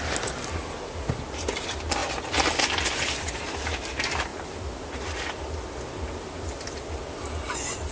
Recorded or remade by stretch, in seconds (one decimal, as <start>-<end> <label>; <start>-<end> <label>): 0.0-7.9 recorded